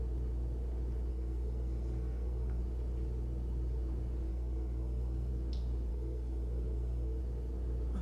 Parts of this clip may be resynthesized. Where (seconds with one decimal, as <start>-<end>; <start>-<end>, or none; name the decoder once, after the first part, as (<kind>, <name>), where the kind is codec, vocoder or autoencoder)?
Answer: 1.1-2.6 (codec, SNAC); 4.3-5.3; 5.9-7.2

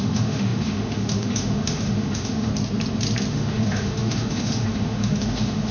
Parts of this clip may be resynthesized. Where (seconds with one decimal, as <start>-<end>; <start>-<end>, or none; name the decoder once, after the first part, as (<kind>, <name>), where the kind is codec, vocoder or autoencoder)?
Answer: 0.0-2.5 (autoencoder, DAC-VAE); 3.3-5.7